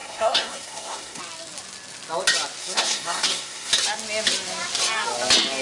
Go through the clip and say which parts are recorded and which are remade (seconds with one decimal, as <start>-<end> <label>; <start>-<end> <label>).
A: 0.0-1.2 remade; 1.2-2.6 recorded; 2.6-3.7 remade; 3.7-5.6 recorded